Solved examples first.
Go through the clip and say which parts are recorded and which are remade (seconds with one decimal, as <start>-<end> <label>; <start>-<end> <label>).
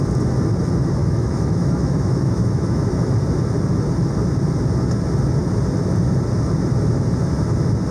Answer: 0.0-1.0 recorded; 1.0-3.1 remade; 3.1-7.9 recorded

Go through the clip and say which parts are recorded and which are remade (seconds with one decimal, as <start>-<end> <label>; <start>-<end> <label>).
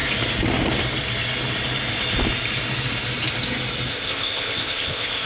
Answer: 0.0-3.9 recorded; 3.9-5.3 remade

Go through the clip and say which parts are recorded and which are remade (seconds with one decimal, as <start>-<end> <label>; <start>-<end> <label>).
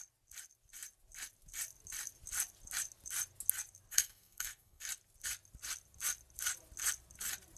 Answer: 0.0-3.9 recorded; 3.9-4.8 remade; 4.8-7.6 recorded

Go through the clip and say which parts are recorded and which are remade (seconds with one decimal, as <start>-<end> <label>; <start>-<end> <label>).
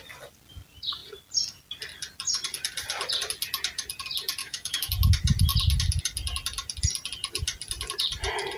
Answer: 0.0-4.4 recorded; 4.4-4.9 remade; 4.9-8.6 recorded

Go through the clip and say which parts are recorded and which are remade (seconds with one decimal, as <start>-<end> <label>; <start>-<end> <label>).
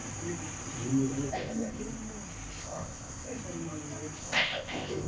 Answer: 0.0-1.3 recorded; 1.3-1.8 remade; 1.8-2.6 recorded; 2.6-3.3 remade; 3.3-4.2 recorded; 4.2-5.1 remade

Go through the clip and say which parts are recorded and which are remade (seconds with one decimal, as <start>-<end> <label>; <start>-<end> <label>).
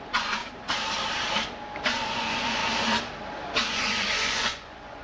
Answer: 0.0-0.4 remade; 0.4-1.8 recorded; 1.8-2.6 remade; 2.6-3.7 recorded; 3.7-5.0 remade